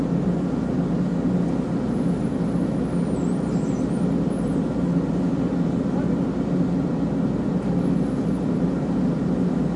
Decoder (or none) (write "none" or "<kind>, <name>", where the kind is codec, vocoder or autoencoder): none